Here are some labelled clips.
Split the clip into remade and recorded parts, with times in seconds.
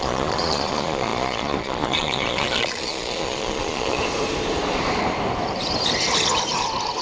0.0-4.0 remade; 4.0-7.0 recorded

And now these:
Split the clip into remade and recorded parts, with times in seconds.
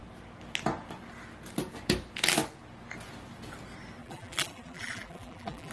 0.0-4.0 recorded; 4.0-5.7 remade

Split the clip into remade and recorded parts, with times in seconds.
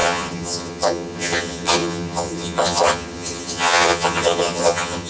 0.0-5.1 remade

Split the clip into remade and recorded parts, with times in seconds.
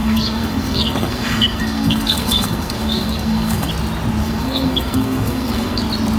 0.0-3.7 remade; 3.7-4.2 recorded; 4.2-5.8 remade; 5.8-6.2 recorded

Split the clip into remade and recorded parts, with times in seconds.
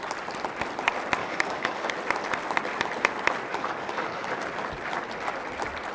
0.0-1.2 recorded; 1.2-1.9 remade; 1.9-3.5 recorded; 3.5-4.4 remade; 4.4-5.9 recorded